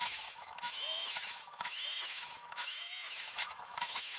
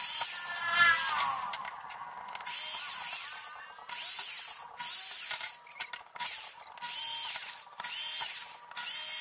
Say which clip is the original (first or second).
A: second